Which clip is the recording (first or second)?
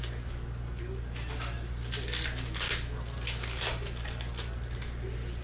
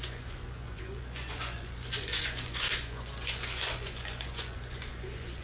first